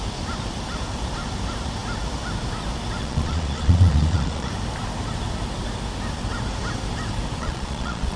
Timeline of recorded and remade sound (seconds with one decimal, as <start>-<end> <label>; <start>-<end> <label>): 0.0-3.0 recorded; 3.0-4.5 remade; 4.5-7.4 recorded; 7.4-8.2 remade